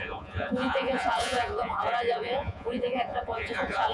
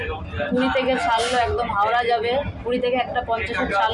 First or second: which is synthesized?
first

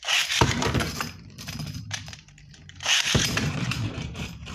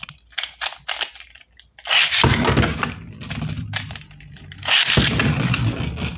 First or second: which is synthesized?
first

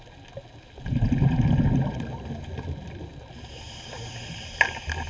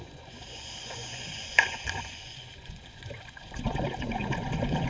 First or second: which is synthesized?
second